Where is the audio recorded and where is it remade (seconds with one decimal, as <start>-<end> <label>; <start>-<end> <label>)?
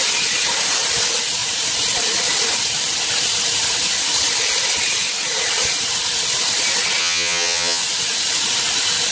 0.0-7.0 recorded; 7.0-7.8 remade; 7.8-9.1 recorded